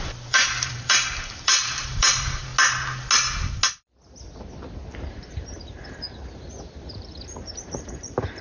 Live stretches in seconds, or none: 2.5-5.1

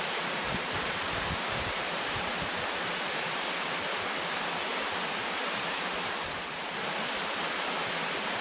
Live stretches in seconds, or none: 0.0-8.4